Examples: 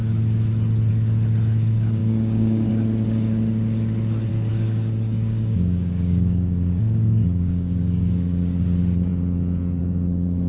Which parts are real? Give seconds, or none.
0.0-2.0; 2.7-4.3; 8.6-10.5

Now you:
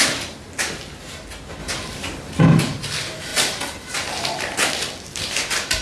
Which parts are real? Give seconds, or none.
0.0-3.3

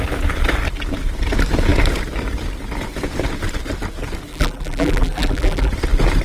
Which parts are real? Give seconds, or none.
0.0-4.3; 5.7-6.2

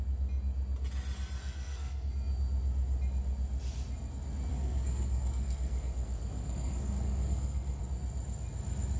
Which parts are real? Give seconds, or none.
0.0-1.4; 2.1-4.5; 7.8-9.0

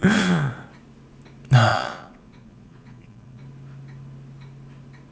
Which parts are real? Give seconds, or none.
0.5-1.7; 3.4-5.1

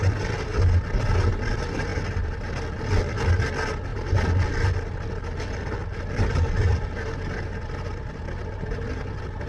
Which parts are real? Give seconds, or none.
0.0-9.5

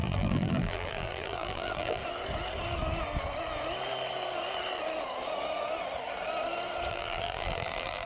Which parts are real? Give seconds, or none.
2.0-6.9

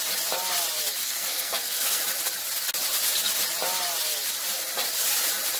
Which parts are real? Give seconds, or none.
0.0-1.0; 2.0-5.6